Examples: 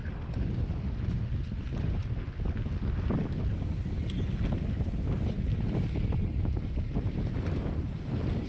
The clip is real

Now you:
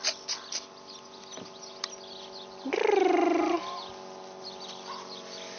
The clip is real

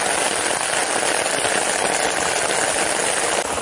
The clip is real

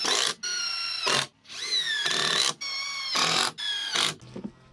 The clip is real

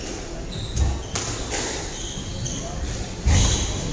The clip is real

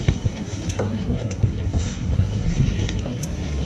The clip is fake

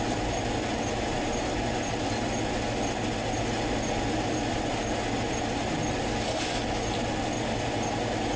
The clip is real